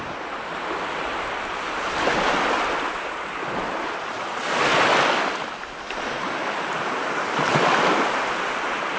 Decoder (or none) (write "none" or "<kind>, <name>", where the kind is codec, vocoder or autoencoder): none